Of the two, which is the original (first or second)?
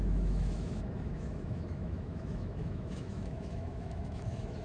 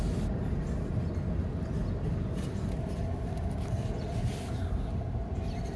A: second